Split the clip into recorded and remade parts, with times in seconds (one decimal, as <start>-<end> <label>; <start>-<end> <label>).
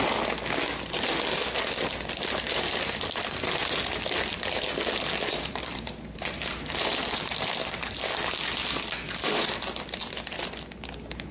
0.0-5.3 recorded; 5.3-6.9 remade; 6.9-11.3 recorded